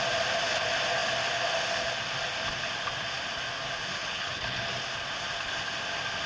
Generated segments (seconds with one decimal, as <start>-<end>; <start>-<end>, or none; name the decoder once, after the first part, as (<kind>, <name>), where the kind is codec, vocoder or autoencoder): 4.0-4.6 (codec, HILCodec)